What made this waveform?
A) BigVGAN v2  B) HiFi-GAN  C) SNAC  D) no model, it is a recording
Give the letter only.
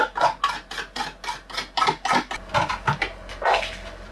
D